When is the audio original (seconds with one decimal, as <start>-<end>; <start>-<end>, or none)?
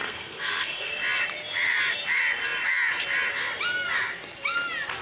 0.9-5.0